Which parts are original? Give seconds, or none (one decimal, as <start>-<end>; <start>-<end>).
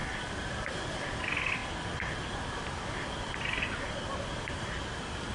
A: none